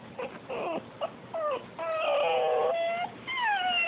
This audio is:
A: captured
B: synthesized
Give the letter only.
A